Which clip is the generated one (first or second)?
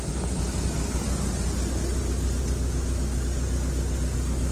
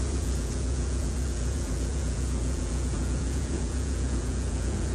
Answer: second